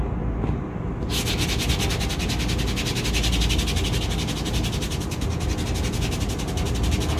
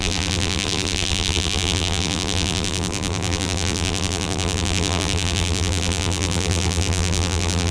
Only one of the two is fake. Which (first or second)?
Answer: second